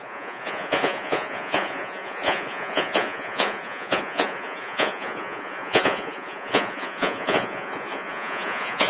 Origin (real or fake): fake